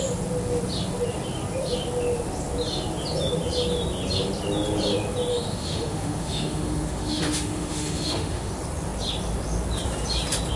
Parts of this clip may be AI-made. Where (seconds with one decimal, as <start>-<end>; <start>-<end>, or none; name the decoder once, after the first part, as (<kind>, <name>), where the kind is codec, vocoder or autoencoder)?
5.3-8.5 (autoencoder, DAC-VAE)